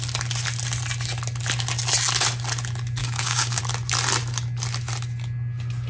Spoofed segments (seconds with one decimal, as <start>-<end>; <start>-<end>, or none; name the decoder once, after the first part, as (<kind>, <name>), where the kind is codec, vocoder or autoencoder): 3.0-3.6 (codec, DAC)